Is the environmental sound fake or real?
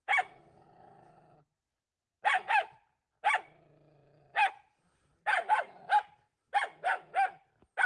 real